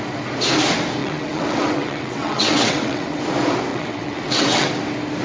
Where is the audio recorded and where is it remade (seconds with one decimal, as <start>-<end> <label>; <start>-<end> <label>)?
0.0-1.0 recorded; 1.0-3.2 remade; 3.2-3.7 recorded; 3.7-4.7 remade; 4.7-5.2 recorded